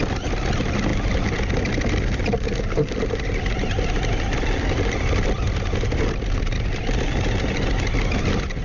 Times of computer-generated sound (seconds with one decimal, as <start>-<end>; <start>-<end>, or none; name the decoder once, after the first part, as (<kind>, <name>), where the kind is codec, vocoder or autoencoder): none